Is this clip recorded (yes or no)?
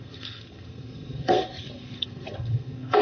no